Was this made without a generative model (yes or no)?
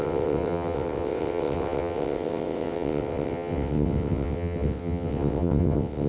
no